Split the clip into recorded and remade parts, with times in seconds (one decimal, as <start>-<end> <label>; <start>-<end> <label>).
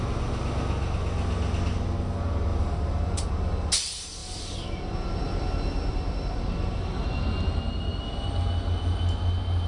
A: 0.0-2.5 recorded; 2.5-3.3 remade; 3.3-9.7 recorded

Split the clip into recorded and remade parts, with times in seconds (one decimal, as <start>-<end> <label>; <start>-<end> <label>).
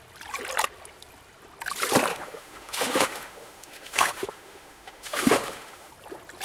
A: 0.0-2.1 recorded; 2.1-5.9 remade; 5.9-6.4 recorded